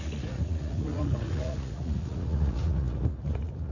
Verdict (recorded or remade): remade